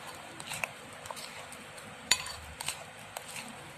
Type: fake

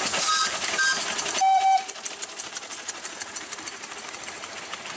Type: real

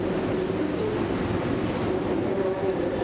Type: real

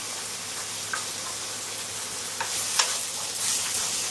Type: real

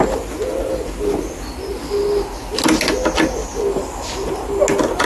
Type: real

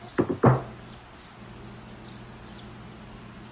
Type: real